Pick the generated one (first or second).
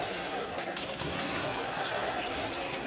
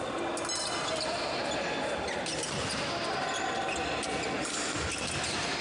first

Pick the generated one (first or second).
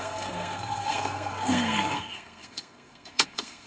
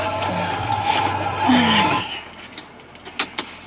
first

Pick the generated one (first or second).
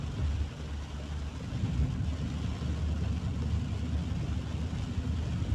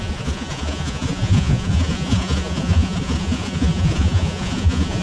second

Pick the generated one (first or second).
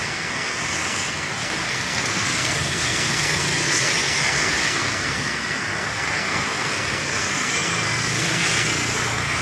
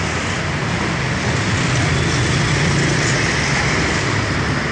first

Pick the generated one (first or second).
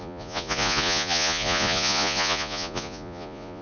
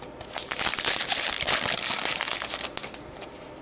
first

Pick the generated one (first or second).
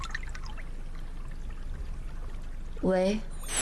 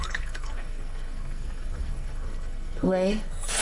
second